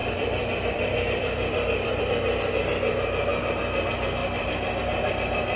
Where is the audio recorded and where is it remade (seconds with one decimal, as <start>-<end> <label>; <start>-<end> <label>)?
0.0-2.0 remade; 2.0-4.2 recorded; 4.2-4.8 remade; 4.8-5.6 recorded